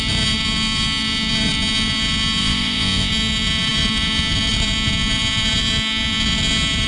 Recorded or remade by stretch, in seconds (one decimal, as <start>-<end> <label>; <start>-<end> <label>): 0.0-2.4 recorded; 2.4-3.1 remade; 3.1-6.9 recorded